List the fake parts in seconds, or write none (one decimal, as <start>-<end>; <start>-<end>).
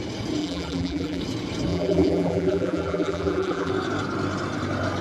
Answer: 0.4-1.2; 1.7-3.7